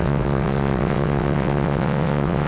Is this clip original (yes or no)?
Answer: no